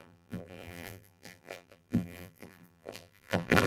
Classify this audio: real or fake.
fake